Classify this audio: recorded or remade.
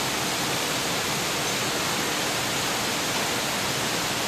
recorded